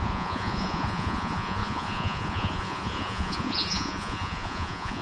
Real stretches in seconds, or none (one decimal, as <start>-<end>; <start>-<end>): none